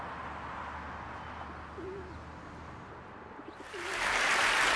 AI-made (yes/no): no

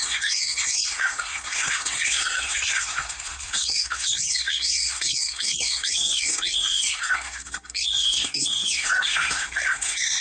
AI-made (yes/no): yes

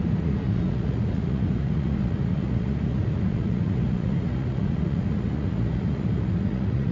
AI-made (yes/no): yes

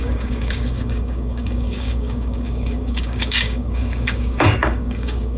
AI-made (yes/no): yes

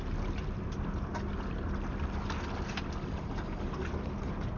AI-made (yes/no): no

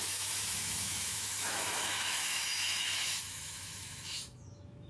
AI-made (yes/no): yes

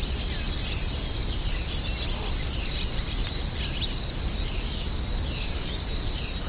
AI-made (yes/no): no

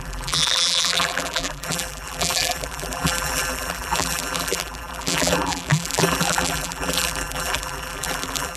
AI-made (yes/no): yes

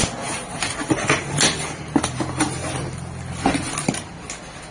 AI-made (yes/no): no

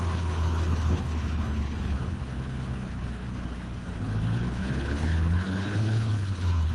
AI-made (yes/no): yes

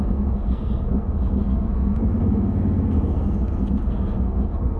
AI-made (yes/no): yes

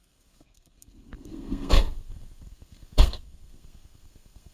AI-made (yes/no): yes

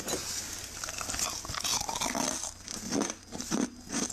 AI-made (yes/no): no